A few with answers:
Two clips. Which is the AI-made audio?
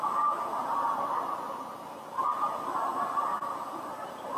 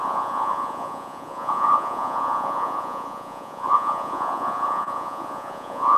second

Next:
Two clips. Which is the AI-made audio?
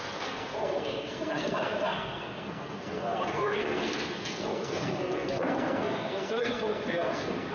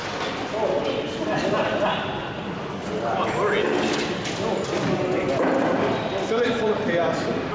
first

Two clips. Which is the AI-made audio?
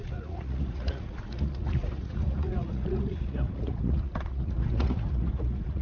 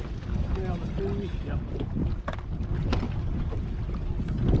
first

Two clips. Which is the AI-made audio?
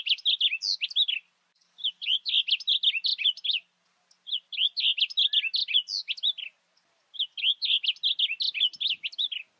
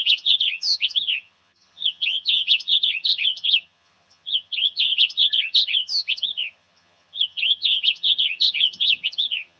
second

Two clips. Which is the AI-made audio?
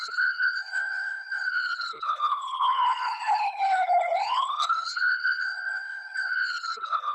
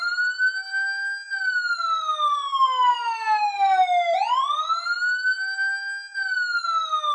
first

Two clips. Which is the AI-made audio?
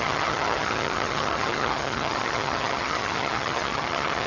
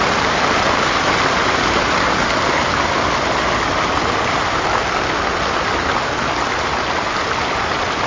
first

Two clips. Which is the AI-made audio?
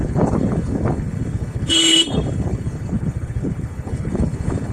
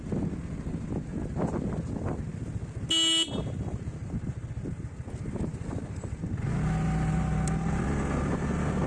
first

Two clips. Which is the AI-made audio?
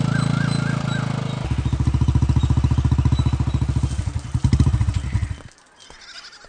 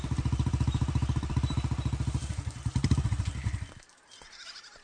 second